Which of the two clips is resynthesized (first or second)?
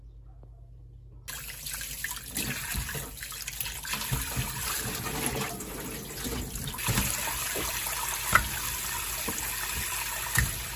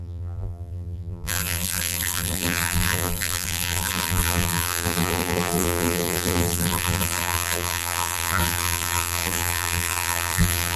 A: second